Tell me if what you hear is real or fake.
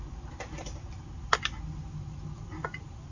real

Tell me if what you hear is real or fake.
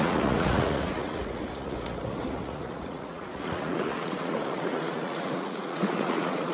fake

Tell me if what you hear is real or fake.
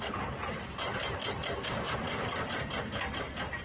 real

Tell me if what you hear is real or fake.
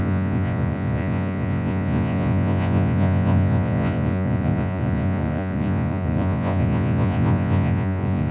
fake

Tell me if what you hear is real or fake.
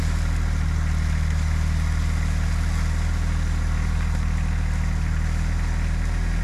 real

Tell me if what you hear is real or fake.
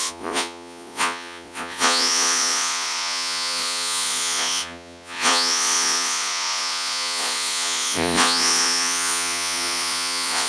fake